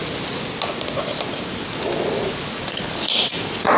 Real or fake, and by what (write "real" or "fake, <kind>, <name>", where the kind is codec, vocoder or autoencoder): real